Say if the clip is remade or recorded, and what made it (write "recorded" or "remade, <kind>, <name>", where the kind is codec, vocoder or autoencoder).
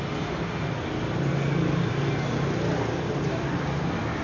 recorded